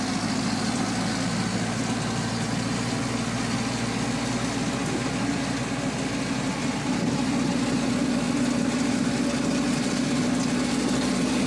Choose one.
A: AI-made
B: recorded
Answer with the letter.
B